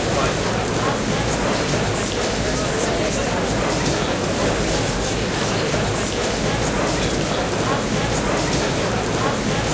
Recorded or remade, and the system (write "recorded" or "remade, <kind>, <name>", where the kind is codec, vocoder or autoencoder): recorded